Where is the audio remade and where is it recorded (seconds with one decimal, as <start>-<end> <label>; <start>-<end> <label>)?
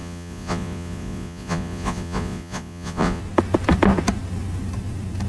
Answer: 0.0-3.2 remade; 3.2-5.3 recorded